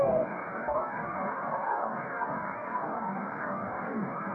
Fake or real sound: fake